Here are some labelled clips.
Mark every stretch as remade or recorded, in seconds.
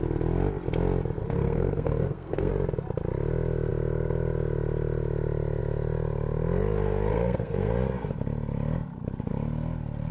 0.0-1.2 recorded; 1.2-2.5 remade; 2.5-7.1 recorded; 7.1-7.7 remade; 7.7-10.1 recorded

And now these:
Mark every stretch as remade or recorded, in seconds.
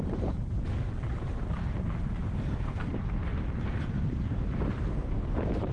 0.0-3.3 remade; 3.3-5.2 recorded; 5.2-5.7 remade